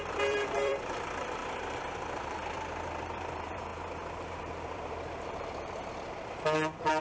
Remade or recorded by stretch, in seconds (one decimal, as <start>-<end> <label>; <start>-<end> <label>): 0.0-1.4 remade; 1.4-1.9 recorded; 1.9-3.7 remade; 3.7-4.4 recorded; 4.4-7.0 remade